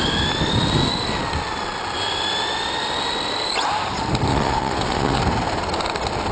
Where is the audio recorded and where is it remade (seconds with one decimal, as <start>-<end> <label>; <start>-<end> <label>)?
0.0-4.3 recorded; 4.3-5.2 remade; 5.2-6.3 recorded

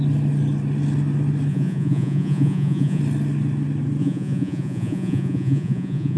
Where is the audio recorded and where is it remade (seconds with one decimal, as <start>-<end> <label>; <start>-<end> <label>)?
0.0-1.5 recorded; 1.5-3.0 remade; 3.0-4.0 recorded; 4.0-6.2 remade

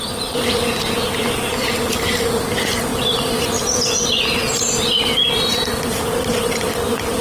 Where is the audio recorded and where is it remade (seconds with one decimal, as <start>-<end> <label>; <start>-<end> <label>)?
0.0-1.5 recorded; 1.5-2.4 remade; 2.4-7.2 recorded

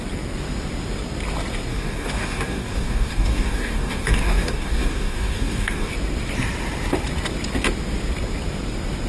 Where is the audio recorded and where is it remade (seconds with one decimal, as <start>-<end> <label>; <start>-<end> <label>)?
0.0-1.7 recorded; 1.7-5.9 remade; 5.9-9.1 recorded

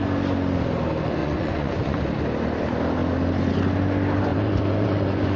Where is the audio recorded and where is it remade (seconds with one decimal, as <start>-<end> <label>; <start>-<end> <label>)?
0.0-1.2 recorded; 1.2-2.0 remade; 2.0-4.3 recorded; 4.3-5.4 remade

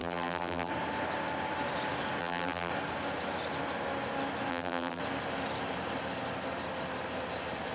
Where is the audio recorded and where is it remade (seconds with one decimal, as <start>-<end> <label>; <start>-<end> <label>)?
0.0-0.7 remade; 0.7-2.2 recorded; 2.2-2.7 remade; 2.7-4.5 recorded; 4.5-5.0 remade; 5.0-7.7 recorded